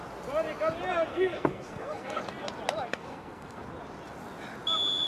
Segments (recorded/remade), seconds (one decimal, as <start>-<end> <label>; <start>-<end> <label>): 0.0-1.1 recorded; 1.1-2.2 remade; 2.2-2.9 recorded; 2.9-3.6 remade; 3.6-5.1 recorded